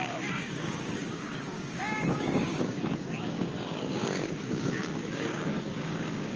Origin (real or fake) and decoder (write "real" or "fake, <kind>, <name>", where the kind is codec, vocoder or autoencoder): fake, codec, DAC